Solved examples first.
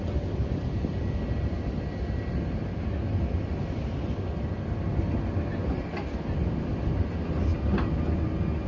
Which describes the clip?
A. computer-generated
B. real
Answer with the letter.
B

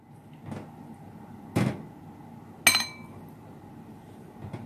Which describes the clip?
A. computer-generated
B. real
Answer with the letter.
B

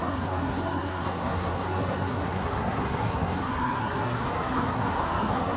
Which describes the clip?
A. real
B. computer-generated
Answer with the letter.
B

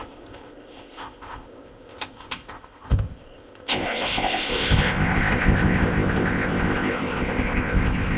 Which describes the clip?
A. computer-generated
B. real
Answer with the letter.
A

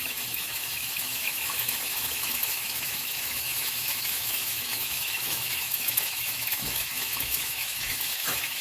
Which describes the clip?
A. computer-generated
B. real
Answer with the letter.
A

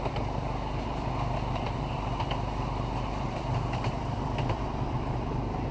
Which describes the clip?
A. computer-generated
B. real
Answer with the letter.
A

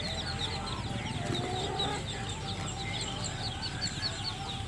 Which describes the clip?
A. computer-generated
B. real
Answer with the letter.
B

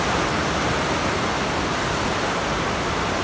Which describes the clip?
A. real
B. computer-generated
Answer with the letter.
A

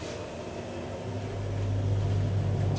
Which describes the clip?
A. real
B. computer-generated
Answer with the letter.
A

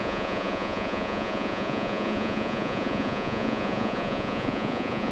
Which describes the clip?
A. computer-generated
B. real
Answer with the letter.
A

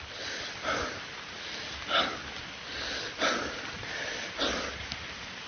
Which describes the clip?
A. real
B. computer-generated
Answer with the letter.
A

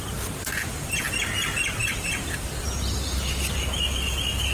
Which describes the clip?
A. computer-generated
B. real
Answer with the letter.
B